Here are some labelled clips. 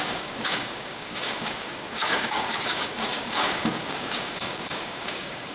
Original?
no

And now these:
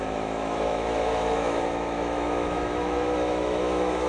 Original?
no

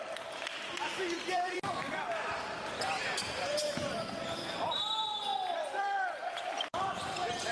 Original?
no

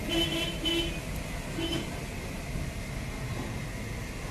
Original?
yes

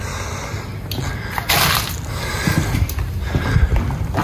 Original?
yes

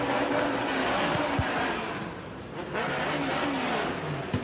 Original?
yes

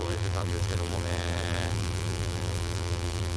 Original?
no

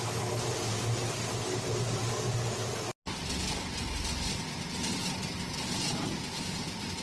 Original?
yes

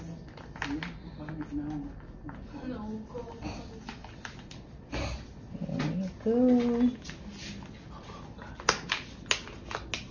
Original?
yes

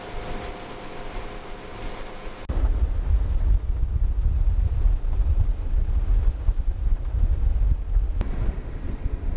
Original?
yes